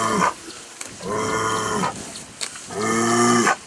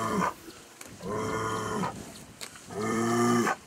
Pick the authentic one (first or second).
first